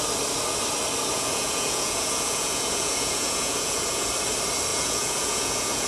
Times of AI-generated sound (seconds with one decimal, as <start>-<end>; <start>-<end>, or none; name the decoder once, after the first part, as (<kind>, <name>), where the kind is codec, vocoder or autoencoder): 1.1-4.1 (vocoder, Vocos); 4.7-5.9